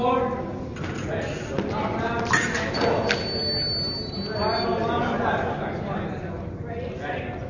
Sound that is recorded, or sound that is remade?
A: recorded